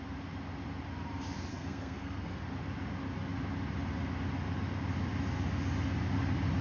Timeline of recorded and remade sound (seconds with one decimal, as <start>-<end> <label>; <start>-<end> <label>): 0.0-1.5 recorded; 1.5-2.4 remade; 2.4-6.6 recorded